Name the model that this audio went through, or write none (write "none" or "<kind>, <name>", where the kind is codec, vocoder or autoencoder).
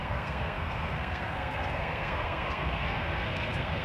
codec, SNAC